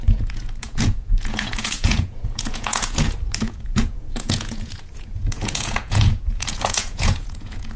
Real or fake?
fake